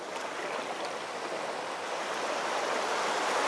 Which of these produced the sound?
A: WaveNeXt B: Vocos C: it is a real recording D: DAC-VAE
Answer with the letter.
C